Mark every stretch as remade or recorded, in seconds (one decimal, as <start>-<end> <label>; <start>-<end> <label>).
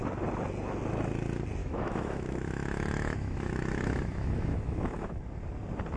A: 0.0-1.6 recorded; 1.6-5.2 remade; 5.2-6.0 recorded